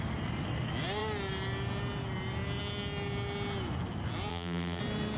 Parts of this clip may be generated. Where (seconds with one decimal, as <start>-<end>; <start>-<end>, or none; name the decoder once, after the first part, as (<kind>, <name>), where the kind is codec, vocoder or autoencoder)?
4.3-4.8 (vocoder, BigVGAN v2)